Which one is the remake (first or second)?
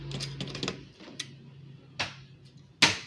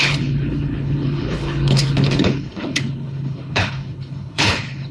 second